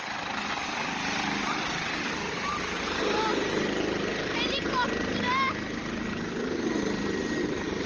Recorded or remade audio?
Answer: recorded